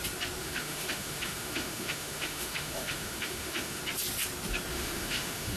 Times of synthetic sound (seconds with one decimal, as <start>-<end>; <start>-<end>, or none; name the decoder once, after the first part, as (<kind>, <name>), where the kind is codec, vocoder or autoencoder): 0.4-3.8 (autoencoder, DAC-VAE); 4.7-5.6